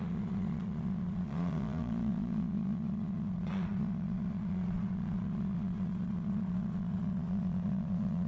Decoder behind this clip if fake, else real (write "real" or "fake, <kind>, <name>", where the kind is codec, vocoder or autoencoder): fake, vocoder, Vocos